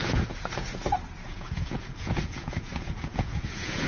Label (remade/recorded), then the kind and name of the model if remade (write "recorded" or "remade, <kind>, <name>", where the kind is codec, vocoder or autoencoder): remade, vocoder, Vocos